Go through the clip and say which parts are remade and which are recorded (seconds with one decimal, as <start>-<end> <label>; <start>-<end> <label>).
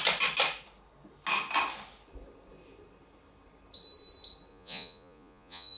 0.0-4.5 recorded; 4.5-5.8 remade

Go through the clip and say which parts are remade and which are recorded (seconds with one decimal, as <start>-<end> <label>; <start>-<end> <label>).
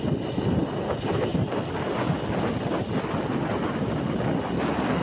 0.0-5.0 recorded